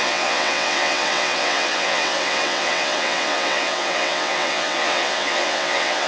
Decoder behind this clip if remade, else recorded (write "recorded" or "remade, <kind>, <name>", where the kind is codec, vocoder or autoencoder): remade, vocoder, WaveNeXt